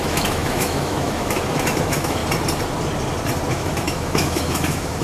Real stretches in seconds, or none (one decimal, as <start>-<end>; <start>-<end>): 2.2-3.5